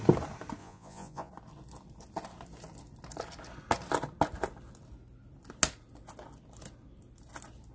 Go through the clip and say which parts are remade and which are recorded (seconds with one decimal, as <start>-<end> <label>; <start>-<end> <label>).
0.0-0.6 recorded; 0.6-1.3 remade; 1.3-7.7 recorded